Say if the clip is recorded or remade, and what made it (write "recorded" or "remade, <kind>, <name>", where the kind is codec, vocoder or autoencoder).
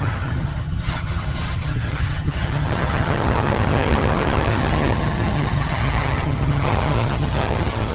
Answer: remade, vocoder, HiFi-GAN